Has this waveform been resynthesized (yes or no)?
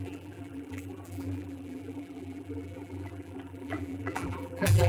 yes